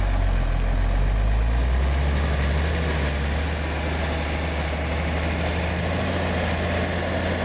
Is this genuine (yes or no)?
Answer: yes